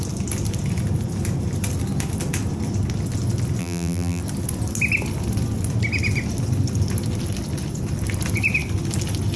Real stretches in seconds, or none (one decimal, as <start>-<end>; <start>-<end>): 0.0-3.6; 4.2-9.4